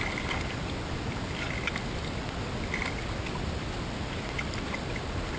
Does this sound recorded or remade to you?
recorded